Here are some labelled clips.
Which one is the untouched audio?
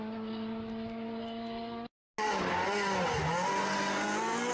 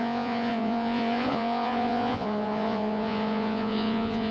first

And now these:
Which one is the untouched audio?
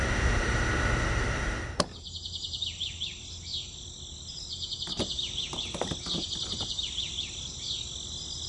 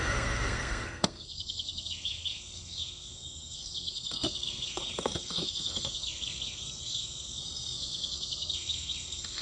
first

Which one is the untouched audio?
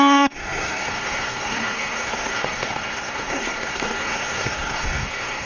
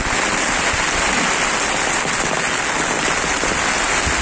second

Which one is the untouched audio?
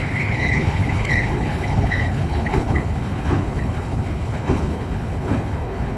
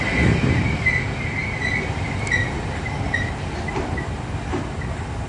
second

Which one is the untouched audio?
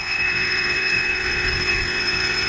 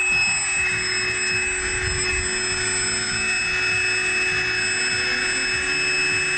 second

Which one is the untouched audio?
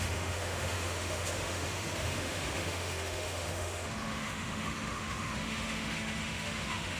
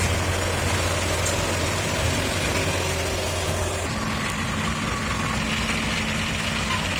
second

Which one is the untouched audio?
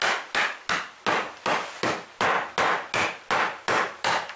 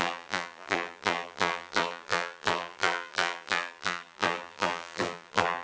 first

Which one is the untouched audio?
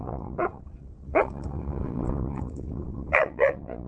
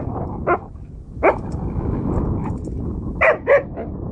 second